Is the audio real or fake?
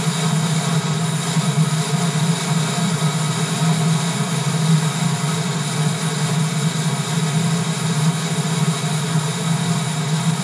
real